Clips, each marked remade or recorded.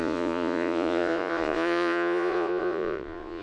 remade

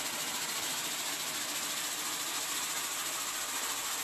recorded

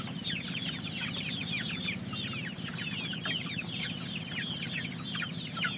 recorded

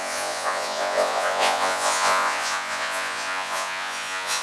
remade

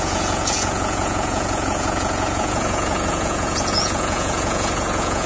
remade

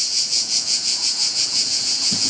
remade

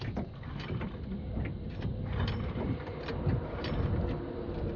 recorded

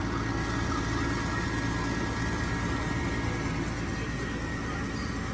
recorded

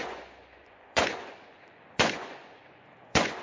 remade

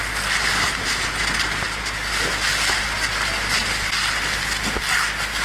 recorded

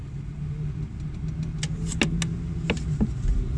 recorded